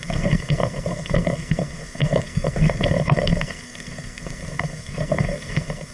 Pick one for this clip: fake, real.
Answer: fake